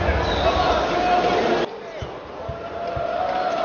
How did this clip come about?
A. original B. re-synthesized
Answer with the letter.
A